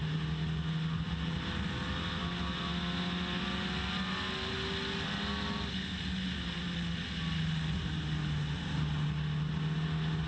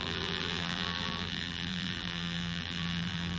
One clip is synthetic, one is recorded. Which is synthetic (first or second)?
second